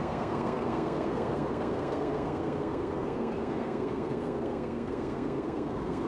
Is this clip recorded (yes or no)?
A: no